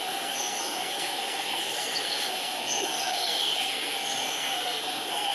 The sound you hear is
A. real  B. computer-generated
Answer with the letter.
B